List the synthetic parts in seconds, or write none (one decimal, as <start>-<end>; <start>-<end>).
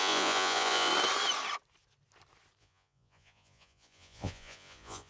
0.0-0.9; 2.6-5.1